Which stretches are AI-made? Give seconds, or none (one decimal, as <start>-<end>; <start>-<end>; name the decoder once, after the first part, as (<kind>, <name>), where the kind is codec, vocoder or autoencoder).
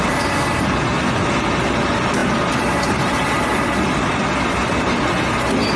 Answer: none